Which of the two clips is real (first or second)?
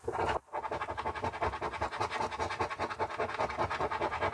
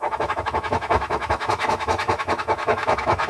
first